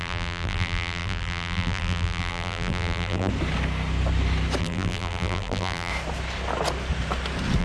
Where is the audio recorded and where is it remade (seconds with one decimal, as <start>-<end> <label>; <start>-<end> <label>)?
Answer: 0.0-3.3 remade; 3.3-4.6 recorded; 4.6-5.9 remade; 5.9-7.6 recorded